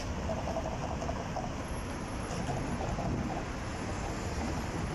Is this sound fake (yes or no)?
no